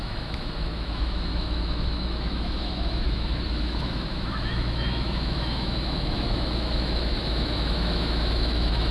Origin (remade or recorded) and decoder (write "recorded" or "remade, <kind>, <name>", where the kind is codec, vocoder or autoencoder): remade, autoencoder, DAC-VAE